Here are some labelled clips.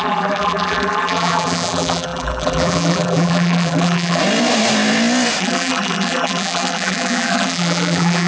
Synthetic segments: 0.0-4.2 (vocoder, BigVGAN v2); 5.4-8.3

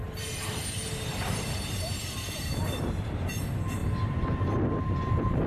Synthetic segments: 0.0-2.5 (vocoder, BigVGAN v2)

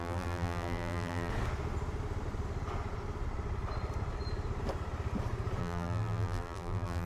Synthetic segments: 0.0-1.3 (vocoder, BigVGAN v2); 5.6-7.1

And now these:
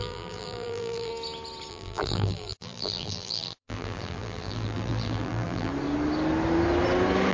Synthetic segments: 0.0-1.1 (vocoder, BigVGAN v2); 1.7-5.7

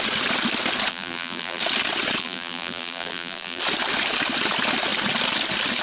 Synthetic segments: 0.9-1.6 (vocoder, BigVGAN v2); 2.2-3.6

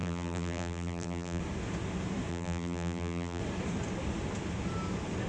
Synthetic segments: 0.0-1.4 (vocoder, BigVGAN v2); 2.3-3.4

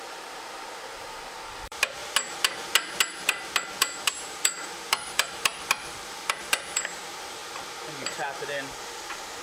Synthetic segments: 0.0-2.0 (vocoder, BigVGAN v2); 3.0-7.4; 8.1-9.4